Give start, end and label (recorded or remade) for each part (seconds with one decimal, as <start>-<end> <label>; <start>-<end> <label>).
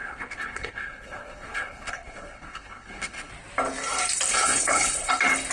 0.0-3.3 remade; 3.3-4.3 recorded; 4.3-5.1 remade; 5.1-5.5 recorded